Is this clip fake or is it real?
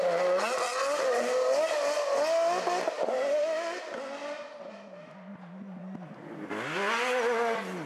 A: real